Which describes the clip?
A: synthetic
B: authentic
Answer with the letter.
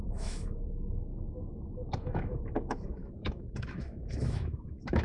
A